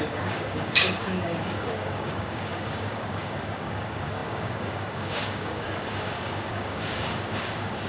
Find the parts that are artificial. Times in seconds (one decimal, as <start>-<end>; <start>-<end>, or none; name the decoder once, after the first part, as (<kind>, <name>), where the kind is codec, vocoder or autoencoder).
0.0-7.9 (codec, DAC)